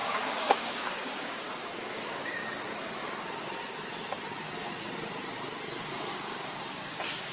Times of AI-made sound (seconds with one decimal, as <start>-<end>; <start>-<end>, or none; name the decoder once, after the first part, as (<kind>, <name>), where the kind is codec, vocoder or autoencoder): 0.0-2.4 (codec, DAC); 5.8-7.3